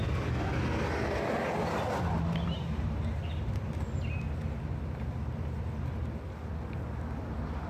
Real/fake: real